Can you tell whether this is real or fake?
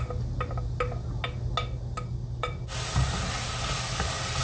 real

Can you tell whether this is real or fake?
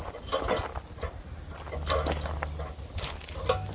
real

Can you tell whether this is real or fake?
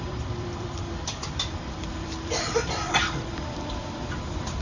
fake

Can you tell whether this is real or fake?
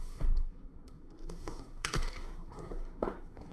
fake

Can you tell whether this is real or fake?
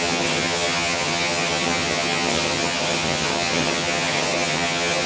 fake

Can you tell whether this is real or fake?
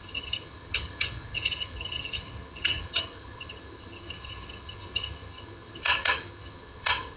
fake